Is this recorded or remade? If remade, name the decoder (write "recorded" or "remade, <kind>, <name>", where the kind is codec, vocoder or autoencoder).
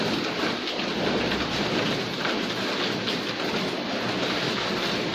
recorded